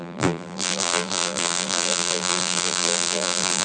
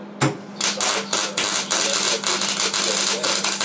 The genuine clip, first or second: second